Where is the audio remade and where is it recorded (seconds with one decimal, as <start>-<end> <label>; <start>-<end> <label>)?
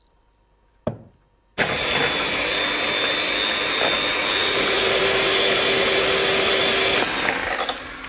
0.0-4.4 recorded; 4.4-4.9 remade; 4.9-8.1 recorded